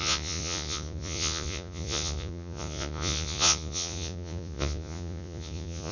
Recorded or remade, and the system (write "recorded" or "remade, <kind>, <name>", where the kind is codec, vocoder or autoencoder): remade, vocoder, Vocos